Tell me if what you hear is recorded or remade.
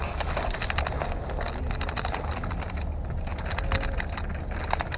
recorded